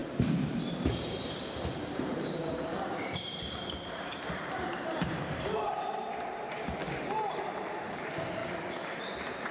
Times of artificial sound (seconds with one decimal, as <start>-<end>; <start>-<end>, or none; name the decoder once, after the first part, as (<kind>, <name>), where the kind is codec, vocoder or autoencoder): 0.0-6.8 (vocoder, BigVGAN v2); 7.3-8.4; 9.0-9.5